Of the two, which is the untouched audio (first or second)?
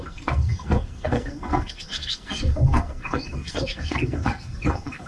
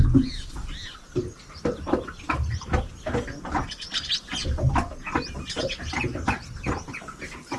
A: second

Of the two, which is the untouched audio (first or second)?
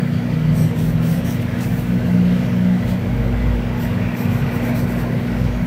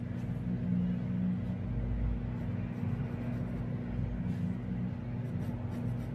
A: second